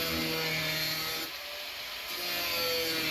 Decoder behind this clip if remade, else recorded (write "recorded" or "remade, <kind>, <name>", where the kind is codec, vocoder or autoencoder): recorded